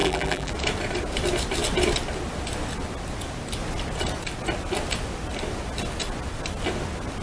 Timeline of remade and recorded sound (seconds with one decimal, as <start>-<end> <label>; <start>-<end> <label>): 0.0-0.5 remade; 0.5-7.2 recorded